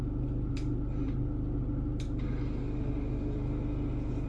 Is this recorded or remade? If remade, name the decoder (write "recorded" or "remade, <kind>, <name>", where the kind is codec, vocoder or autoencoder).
recorded